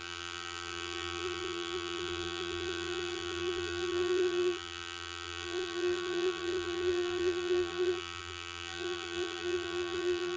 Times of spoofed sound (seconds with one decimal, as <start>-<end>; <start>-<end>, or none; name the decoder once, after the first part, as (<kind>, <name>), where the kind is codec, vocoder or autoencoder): 0.0-10.4 (vocoder, BigVGAN v2)